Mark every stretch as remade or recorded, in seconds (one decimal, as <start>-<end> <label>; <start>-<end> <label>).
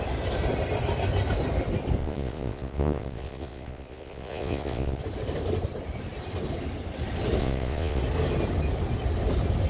0.0-2.0 recorded; 2.0-5.0 remade; 5.0-7.4 recorded; 7.4-8.0 remade; 8.0-9.7 recorded